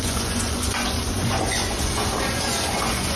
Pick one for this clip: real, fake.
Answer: fake